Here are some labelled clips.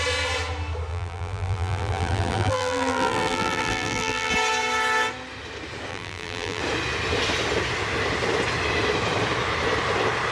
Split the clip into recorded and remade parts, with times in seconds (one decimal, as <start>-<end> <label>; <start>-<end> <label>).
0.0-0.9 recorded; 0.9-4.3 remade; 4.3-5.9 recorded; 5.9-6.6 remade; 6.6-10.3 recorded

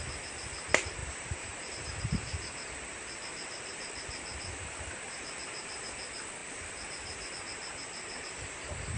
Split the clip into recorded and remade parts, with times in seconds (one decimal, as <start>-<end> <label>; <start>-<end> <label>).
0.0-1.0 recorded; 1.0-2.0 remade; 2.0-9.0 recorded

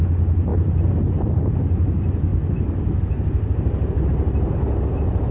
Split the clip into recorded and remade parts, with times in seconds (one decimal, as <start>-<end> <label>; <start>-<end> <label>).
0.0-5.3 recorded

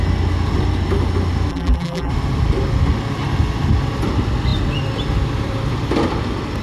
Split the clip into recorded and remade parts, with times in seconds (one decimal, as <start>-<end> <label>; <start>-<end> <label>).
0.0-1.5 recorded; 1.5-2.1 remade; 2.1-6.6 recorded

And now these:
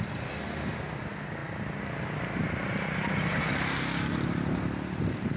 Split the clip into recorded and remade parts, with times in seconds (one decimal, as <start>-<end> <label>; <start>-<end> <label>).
0.0-5.4 recorded

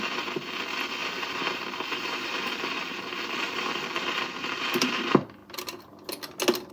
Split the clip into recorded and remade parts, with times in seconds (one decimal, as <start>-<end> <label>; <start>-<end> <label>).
0.0-1.0 recorded; 1.0-5.0 remade; 5.0-6.7 recorded

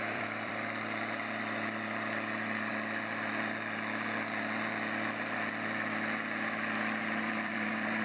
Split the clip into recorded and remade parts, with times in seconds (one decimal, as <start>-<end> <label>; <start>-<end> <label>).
0.0-2.7 remade; 2.7-7.2 recorded; 7.2-8.0 remade

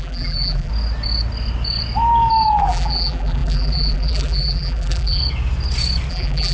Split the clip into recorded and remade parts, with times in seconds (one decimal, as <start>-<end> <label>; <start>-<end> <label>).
0.0-0.7 remade; 0.7-2.6 recorded; 2.6-5.2 remade; 5.2-6.1 recorded; 6.1-6.5 remade